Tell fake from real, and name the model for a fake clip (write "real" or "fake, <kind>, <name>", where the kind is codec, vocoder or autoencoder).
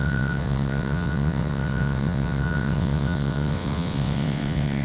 fake, vocoder, WaveNeXt